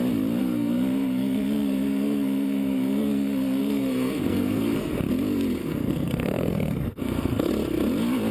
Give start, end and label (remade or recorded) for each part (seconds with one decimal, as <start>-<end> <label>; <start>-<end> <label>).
0.0-0.4 recorded; 0.4-4.9 remade; 4.9-5.6 recorded; 5.6-7.5 remade; 7.5-8.3 recorded